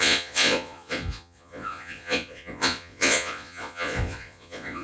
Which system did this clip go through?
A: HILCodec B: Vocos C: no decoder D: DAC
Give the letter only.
B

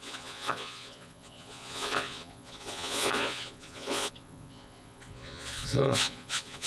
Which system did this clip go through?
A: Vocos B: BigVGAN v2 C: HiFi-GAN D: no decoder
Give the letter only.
A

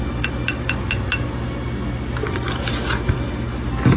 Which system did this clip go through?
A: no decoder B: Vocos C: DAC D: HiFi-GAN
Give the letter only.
A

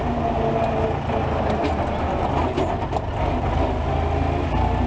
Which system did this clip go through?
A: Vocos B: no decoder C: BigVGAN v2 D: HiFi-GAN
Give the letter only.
B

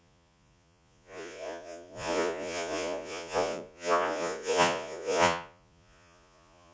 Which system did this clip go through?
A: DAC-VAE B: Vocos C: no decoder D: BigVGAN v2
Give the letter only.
B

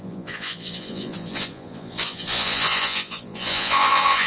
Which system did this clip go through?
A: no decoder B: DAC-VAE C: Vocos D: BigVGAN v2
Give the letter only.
C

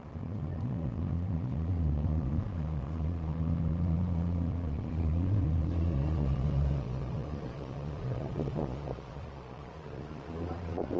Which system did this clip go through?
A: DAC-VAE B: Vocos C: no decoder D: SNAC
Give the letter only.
B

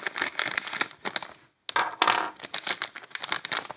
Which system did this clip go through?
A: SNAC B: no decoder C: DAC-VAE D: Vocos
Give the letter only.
B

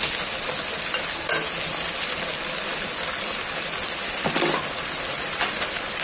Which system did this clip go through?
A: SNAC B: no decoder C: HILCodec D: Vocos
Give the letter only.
B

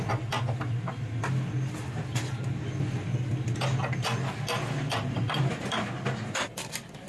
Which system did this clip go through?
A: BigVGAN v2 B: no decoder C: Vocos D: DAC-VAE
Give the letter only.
B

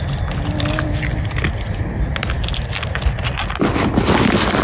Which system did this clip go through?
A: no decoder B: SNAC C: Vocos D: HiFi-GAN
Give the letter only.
A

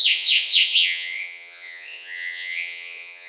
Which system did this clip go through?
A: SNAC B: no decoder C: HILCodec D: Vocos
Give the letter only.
D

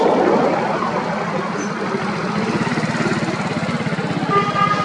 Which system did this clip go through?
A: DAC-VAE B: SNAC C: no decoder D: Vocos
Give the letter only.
C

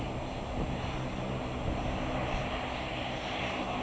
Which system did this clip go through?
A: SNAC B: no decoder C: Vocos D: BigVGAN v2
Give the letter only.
B